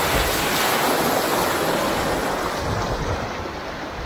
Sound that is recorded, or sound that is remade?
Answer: recorded